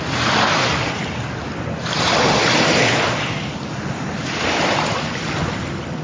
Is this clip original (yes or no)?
no